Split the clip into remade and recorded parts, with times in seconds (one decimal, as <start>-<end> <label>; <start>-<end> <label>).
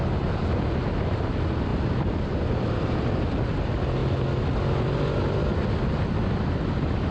0.0-1.7 recorded; 1.7-3.1 remade; 3.1-7.1 recorded